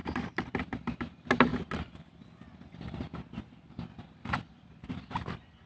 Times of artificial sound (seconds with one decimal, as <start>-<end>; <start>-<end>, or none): none